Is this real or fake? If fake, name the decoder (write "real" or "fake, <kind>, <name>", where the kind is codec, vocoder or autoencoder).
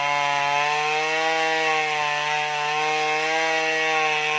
real